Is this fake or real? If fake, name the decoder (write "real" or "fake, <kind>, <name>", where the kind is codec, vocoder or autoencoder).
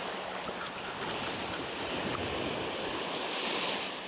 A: real